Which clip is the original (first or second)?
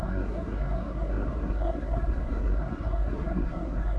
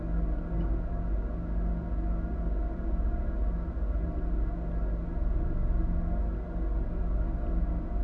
second